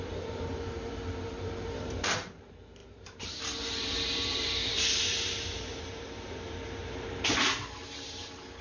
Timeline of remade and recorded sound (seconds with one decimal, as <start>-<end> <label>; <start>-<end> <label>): 0.0-8.6 remade